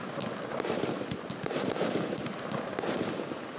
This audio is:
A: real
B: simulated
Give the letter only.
A